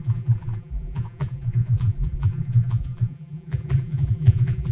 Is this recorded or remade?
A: remade